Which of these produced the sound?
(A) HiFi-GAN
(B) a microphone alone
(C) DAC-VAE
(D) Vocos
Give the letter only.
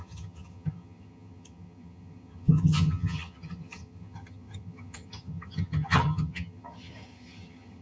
A